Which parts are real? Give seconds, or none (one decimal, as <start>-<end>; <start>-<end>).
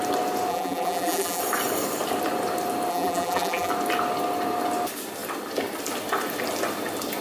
0.0-0.5; 1.4-2.9; 3.7-7.2